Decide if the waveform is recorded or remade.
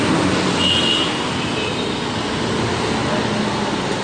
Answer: recorded